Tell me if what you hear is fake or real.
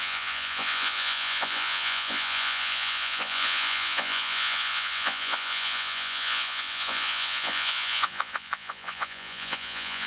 fake